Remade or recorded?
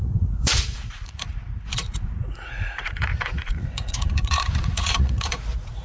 remade